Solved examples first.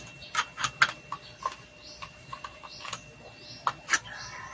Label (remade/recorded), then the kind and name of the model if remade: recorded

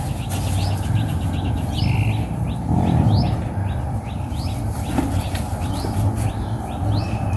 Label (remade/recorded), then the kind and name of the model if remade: recorded